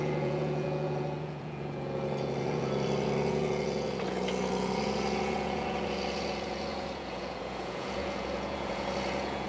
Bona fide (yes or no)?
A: no